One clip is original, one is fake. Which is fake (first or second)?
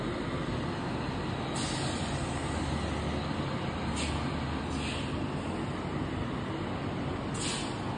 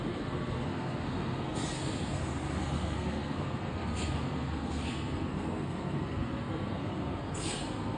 second